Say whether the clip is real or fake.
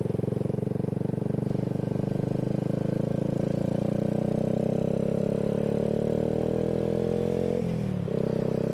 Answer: real